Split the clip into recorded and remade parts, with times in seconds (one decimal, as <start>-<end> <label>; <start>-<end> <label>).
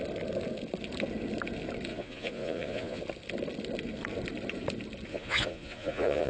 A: 0.0-1.9 recorded; 1.9-3.0 remade; 3.0-5.1 recorded; 5.1-6.3 remade